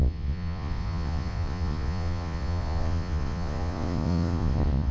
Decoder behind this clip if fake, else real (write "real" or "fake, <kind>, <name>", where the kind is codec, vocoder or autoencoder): fake, vocoder, Vocos